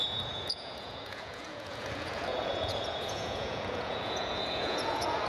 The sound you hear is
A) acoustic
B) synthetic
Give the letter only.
B